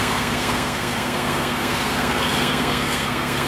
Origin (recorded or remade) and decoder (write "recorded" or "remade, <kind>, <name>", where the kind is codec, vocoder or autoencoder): remade, codec, SNAC